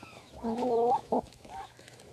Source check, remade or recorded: remade